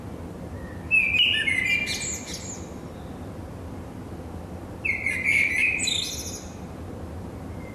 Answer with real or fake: real